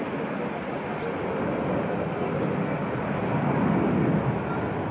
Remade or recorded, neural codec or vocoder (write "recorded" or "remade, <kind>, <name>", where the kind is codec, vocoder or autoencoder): recorded